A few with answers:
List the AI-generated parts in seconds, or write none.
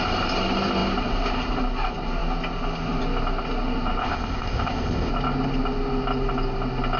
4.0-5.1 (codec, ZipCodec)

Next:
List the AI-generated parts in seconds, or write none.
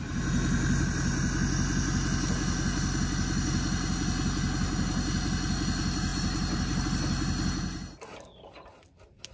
none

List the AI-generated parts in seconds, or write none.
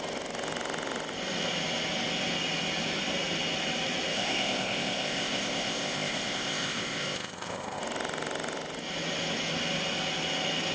4.1-7.8 (codec, ZipCodec)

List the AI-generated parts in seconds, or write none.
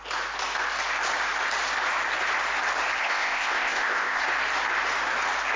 3.0-4.2 (codec, ZipCodec)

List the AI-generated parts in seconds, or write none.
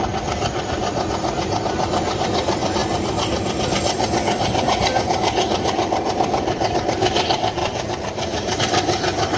none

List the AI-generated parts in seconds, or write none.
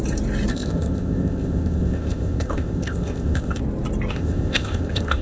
0.5-3.6 (codec, ZipCodec); 4.1-5.2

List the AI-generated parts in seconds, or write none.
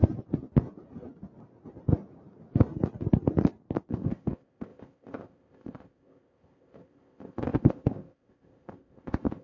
3.9-9.4 (codec, ZipCodec)